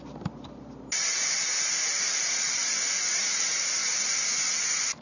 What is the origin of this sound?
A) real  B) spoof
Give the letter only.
A